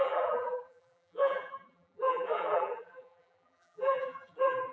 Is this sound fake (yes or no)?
yes